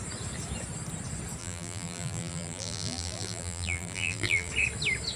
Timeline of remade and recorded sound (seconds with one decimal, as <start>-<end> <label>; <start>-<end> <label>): 0.0-1.4 recorded; 1.4-4.5 remade; 4.5-5.2 recorded